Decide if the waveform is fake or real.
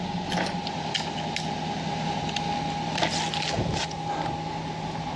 real